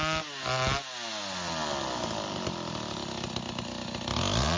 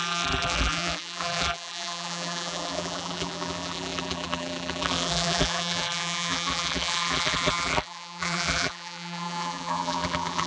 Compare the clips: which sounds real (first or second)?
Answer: first